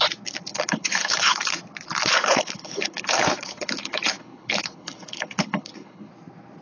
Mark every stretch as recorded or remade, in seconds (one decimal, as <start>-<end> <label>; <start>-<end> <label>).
0.0-0.5 recorded; 0.5-1.5 remade; 1.5-2.1 recorded; 2.1-6.1 remade; 6.1-6.6 recorded